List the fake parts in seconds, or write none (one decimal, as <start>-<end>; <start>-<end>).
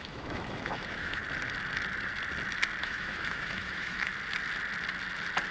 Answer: 0.0-1.2; 2.8-4.1